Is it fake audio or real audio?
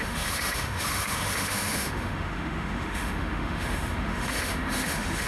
fake